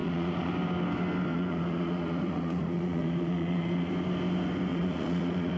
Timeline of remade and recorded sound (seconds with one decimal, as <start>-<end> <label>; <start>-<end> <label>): 0.0-0.5 remade; 0.5-1.3 recorded; 1.3-3.9 remade; 3.9-4.7 recorded; 4.7-5.6 remade